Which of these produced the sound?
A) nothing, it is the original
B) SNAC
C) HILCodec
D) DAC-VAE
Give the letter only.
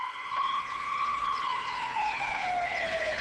C